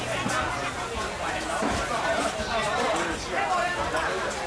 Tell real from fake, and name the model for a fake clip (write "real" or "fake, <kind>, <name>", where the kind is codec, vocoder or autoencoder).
real